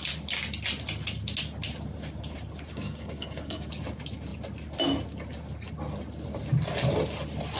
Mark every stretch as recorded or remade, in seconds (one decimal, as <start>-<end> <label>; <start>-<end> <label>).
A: 0.0-2.7 recorded; 2.7-3.7 remade; 3.7-7.6 recorded